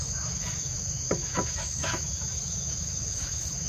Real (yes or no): no